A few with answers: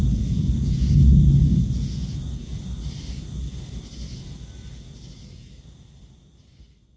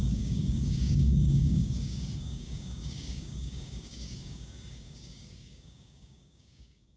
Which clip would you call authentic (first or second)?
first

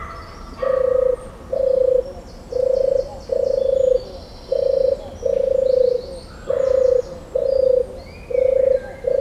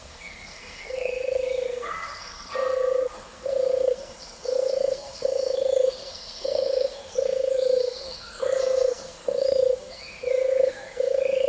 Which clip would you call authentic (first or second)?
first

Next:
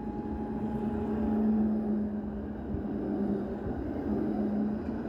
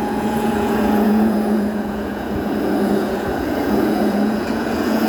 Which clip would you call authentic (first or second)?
first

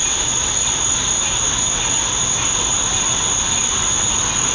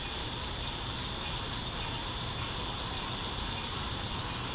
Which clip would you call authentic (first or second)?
first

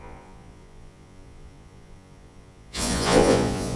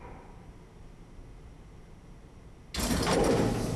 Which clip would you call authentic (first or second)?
second